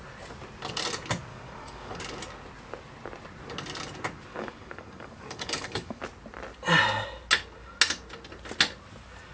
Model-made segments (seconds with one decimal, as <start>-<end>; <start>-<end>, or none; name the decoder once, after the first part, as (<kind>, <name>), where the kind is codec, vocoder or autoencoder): 1.3-2.0 (codec, DAC); 4.3-6.0